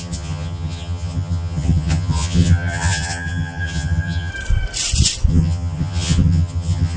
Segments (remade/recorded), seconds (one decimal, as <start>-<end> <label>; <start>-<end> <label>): 0.0-4.3 remade; 4.3-5.3 recorded; 5.3-7.0 remade

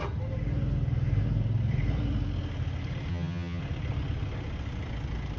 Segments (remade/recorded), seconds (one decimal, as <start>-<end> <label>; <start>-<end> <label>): 0.0-3.1 recorded; 3.1-3.6 remade; 3.6-5.4 recorded

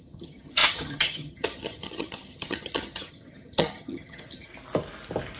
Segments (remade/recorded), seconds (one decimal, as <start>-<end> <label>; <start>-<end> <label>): 0.0-4.5 remade; 4.5-5.4 recorded

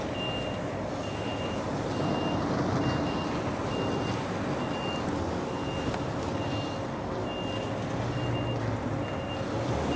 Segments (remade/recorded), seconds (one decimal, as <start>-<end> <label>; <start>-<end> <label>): 0.0-10.0 recorded

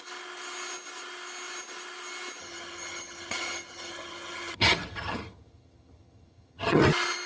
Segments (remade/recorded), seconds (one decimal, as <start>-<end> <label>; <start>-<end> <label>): 0.0-2.4 recorded; 2.4-6.8 remade; 6.8-7.3 recorded

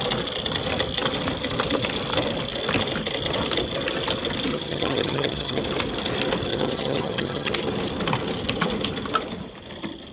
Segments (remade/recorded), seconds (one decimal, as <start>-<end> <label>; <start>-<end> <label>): 0.0-4.5 recorded; 4.5-5.6 remade; 5.6-6.5 recorded; 6.5-7.5 remade; 7.5-10.1 recorded

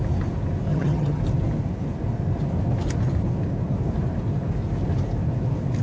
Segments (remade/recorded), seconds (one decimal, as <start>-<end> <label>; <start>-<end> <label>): 0.0-0.7 recorded; 0.7-1.2 remade; 1.2-5.8 recorded

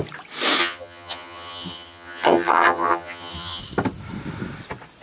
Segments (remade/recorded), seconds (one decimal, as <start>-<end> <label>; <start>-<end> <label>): 0.0-0.6 recorded; 0.6-3.6 remade; 3.6-5.0 recorded